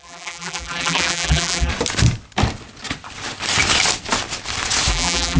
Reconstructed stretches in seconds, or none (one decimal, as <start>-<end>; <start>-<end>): 0.0-1.7; 4.9-5.4